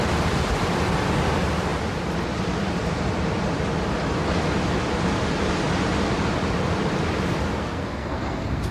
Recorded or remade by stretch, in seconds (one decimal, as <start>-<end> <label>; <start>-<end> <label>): 0.0-7.5 recorded; 7.5-8.7 remade